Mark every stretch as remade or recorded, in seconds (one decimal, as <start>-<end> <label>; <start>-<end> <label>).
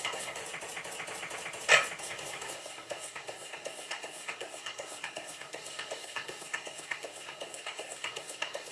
0.0-0.4 remade; 0.4-2.0 recorded; 2.0-8.7 remade